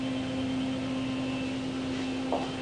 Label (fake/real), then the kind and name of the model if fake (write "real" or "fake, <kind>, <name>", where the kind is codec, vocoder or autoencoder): real